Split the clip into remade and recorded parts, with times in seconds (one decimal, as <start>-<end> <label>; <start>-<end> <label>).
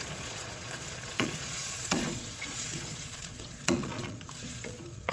0.0-5.1 remade